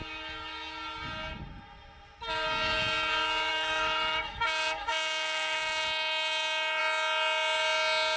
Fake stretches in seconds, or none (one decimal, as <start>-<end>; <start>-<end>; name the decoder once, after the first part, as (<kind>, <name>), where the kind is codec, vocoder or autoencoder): 3.5-6.8 (autoencoder, DAC-VAE)